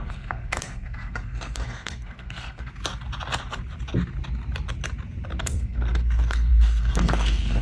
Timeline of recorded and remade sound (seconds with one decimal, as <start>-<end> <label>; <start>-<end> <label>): 0.0-2.7 remade; 2.7-5.4 recorded; 5.4-7.6 remade